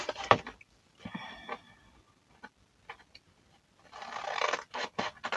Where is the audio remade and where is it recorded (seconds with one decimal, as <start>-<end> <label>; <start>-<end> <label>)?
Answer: 0.0-5.4 recorded